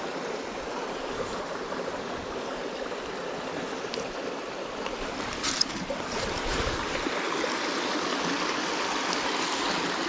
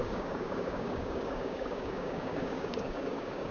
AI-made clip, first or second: second